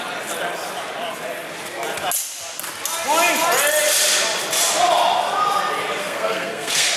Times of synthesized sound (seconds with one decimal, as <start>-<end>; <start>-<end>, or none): 6.0-7.0